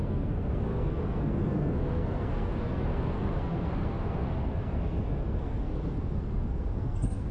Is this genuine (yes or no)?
no